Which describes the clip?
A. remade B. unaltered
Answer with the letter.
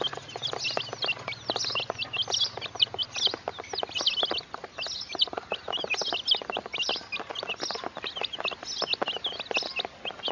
B